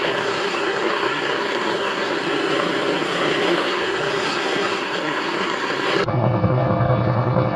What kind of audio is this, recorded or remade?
remade